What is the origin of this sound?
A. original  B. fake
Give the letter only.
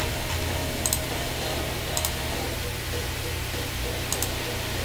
A